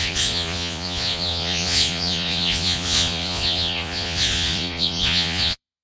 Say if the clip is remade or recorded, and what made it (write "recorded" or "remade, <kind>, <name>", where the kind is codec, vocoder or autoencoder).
remade, vocoder, Vocos